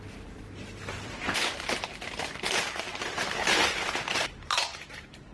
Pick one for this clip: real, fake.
fake